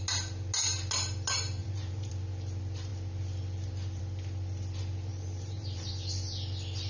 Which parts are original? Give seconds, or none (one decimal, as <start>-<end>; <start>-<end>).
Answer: 0.0-1.6; 2.1-5.1; 5.9-6.9